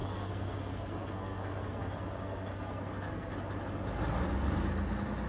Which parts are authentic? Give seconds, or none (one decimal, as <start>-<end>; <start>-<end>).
3.3-5.3